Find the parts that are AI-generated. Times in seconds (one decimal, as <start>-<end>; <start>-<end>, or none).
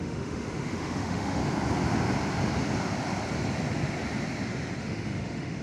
0.0-1.4; 4.8-5.6